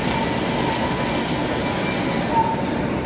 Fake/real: real